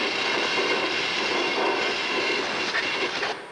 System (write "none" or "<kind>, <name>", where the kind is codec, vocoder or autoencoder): none